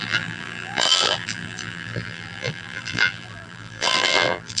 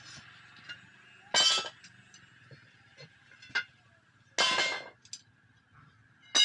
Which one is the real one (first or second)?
second